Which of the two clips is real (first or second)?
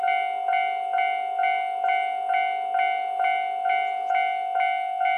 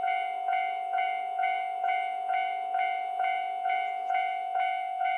first